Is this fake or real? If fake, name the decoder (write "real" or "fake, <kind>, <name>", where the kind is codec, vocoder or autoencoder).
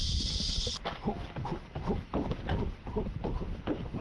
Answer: fake, vocoder, BigVGAN v2